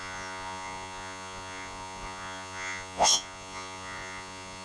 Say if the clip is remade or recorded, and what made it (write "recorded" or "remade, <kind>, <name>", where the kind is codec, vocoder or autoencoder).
remade, vocoder, Vocos